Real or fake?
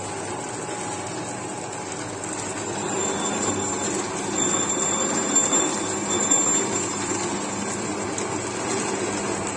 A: real